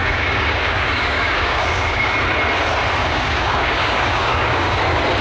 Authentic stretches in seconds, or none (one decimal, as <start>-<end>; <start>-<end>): 2.1-3.0; 4.8-5.2